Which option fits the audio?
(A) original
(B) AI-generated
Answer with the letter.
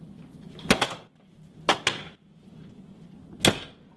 A